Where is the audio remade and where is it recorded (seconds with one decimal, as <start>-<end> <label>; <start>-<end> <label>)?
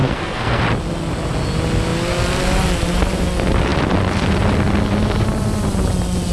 0.0-0.6 remade; 0.6-6.3 recorded